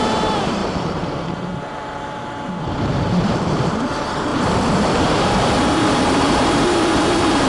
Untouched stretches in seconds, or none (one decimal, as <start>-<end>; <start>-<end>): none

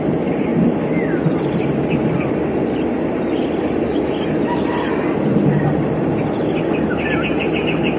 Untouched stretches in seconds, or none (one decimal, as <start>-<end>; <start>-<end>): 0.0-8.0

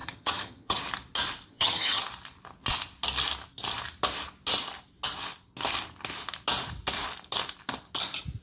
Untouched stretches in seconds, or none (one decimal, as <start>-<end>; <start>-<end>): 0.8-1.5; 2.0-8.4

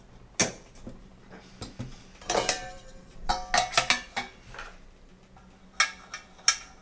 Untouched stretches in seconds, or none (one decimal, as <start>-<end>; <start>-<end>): 0.0-0.4; 1.5-1.9; 3.3-6.8

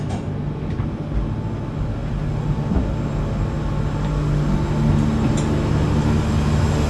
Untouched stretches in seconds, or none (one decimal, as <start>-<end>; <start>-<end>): 0.0-6.9

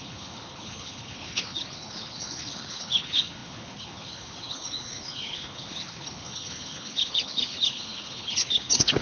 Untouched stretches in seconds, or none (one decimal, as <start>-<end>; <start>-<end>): none